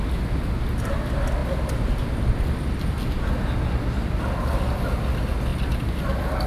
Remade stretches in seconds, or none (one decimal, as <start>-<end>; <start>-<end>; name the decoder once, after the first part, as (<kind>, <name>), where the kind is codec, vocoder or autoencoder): none